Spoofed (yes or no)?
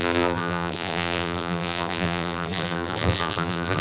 yes